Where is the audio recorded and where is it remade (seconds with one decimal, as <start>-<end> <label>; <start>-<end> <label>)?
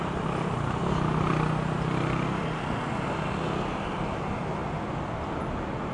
0.0-5.9 recorded